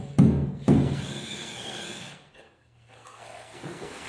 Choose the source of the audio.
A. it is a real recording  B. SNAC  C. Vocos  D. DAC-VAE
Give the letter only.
B